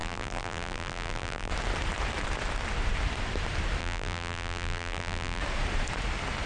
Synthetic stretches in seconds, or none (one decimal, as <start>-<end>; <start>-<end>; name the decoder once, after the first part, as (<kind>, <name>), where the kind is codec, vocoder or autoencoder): 0.0-1.5 (vocoder, BigVGAN v2); 3.8-5.4